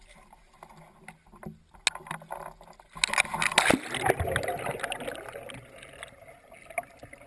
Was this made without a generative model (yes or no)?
yes